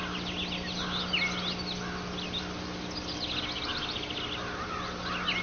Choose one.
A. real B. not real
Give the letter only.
A